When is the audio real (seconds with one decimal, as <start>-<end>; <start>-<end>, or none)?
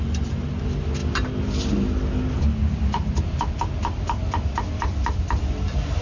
0.0-6.0